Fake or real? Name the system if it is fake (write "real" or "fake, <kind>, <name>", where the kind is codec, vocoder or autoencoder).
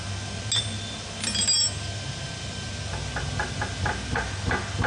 real